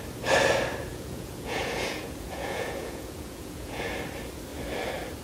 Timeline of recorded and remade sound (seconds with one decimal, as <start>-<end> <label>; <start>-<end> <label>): 0.0-0.8 recorded; 0.8-3.9 remade; 3.9-5.2 recorded